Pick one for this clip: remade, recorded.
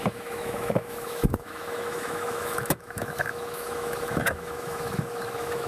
remade